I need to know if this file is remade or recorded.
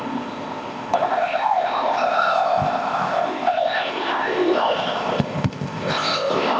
remade